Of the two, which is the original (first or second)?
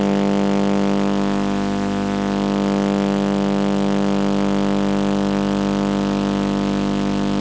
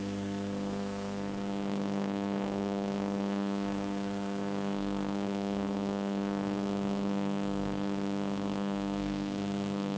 first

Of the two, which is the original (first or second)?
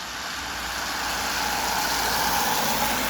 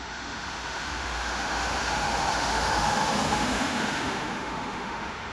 first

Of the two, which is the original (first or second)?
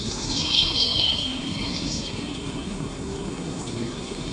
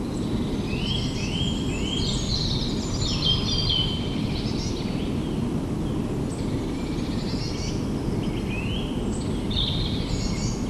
second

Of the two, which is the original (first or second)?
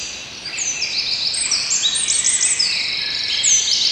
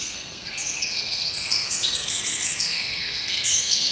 first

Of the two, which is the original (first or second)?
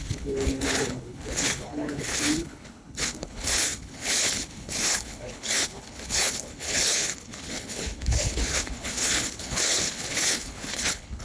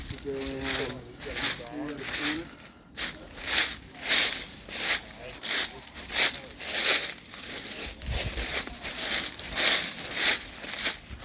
second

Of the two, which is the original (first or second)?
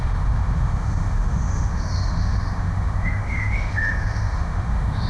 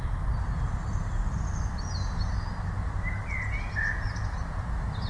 second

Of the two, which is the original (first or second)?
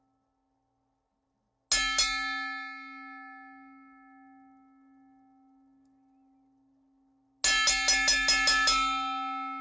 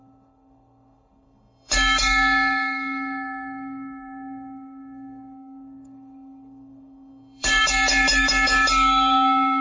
first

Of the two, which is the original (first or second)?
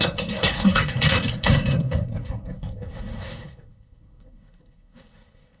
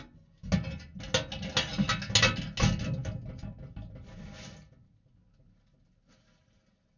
second